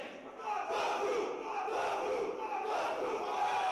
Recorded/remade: recorded